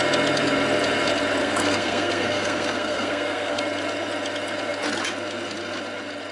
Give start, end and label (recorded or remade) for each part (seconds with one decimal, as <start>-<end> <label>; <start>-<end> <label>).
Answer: 0.0-1.4 recorded; 1.4-3.6 remade; 3.6-6.3 recorded